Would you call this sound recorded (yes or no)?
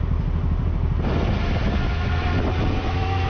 yes